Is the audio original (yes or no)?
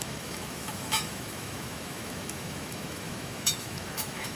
no